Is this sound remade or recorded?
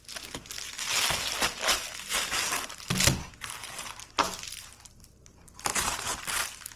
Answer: recorded